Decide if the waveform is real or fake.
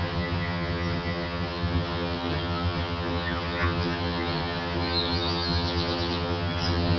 fake